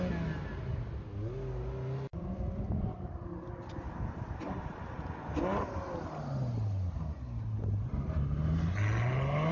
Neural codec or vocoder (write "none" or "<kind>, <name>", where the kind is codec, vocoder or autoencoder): none